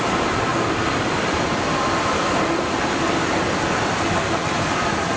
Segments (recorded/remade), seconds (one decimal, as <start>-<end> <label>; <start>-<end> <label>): 0.0-0.5 recorded; 0.5-3.6 remade; 3.6-5.2 recorded